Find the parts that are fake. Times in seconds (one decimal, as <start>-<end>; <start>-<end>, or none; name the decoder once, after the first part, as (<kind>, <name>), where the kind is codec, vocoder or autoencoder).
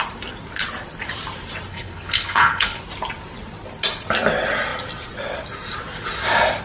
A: 1.7-2.8 (codec, HILCodec)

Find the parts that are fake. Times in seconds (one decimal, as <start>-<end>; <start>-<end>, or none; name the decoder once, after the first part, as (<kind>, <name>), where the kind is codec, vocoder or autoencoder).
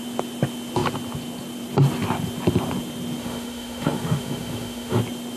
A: 3.2-5.0 (autoencoder, DAC-VAE)